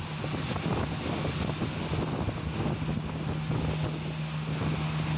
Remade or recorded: recorded